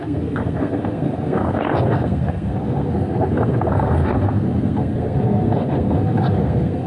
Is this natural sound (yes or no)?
no